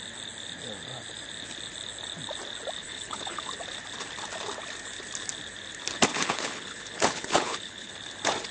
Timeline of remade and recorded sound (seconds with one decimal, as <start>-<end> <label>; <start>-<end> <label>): 0.0-2.8 recorded; 2.8-3.5 remade; 3.5-6.1 recorded; 6.1-7.9 remade; 7.9-8.5 recorded

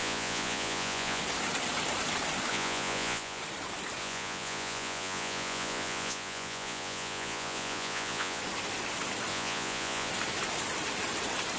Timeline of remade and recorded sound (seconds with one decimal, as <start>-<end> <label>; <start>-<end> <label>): 0.0-1.2 remade; 1.2-2.5 recorded; 2.5-3.4 remade; 3.4-4.0 recorded; 4.0-8.4 remade; 8.4-9.3 recorded; 9.3-10.1 remade; 10.1-11.6 recorded

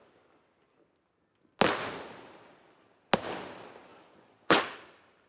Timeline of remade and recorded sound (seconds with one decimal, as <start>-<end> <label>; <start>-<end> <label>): 0.0-3.9 recorded; 3.9-4.6 remade; 4.6-5.3 recorded

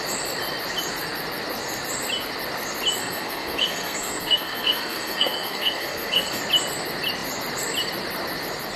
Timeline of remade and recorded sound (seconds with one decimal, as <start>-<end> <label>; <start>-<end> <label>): 0.0-3.0 recorded; 3.0-6.4 remade; 6.4-8.8 recorded

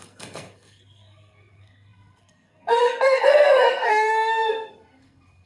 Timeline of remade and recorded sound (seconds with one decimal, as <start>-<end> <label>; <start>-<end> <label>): 0.0-5.5 remade